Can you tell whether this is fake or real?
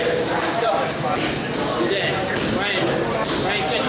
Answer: real